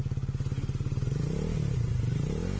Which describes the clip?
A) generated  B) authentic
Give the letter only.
B